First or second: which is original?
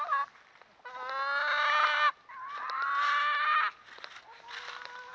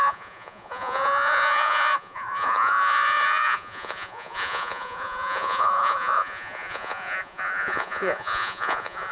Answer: first